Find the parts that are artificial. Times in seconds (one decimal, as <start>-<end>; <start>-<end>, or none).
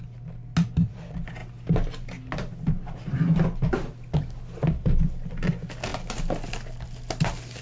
none